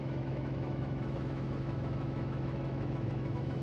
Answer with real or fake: fake